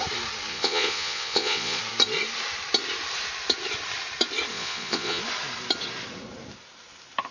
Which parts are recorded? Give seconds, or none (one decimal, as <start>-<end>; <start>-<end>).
0.0-0.5; 1.8-4.5; 5.2-7.3